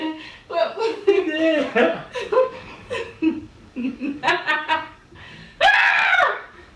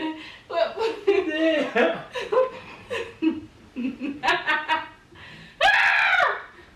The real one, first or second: second